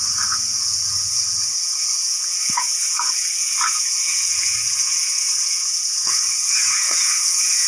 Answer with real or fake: fake